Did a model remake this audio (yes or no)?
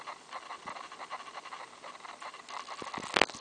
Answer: no